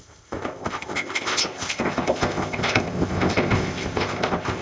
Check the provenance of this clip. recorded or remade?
remade